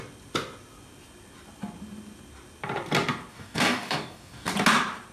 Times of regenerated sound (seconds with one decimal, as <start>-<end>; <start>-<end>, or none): 3.3-4.5